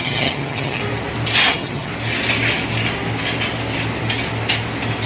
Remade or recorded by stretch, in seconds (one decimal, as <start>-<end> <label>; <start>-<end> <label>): 0.0-0.8 remade; 0.8-1.5 recorded; 1.5-1.9 remade; 1.9-5.1 recorded